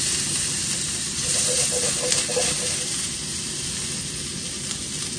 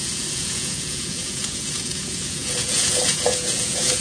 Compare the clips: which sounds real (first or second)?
first